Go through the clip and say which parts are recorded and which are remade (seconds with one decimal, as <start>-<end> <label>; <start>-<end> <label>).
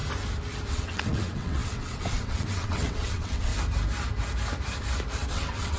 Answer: 0.0-0.7 recorded; 0.7-3.5 remade; 3.5-5.3 recorded; 5.3-5.8 remade